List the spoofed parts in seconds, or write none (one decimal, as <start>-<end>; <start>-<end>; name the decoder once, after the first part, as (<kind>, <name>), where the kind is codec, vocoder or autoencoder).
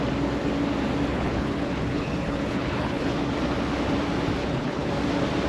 1.1-3.2 (codec, HILCodec); 4.4-4.9